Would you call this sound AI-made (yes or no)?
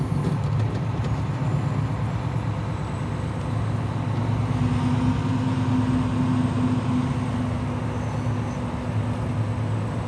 no